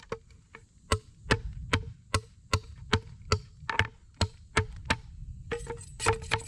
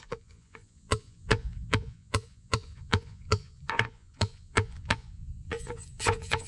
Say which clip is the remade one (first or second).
second